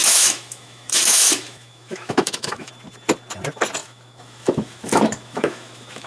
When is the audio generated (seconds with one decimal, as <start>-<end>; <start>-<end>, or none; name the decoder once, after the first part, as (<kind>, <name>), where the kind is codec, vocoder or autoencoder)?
0.0-2.7 (autoencoder, DAC-VAE); 3.8-6.1